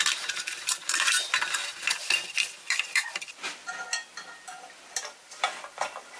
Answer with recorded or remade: remade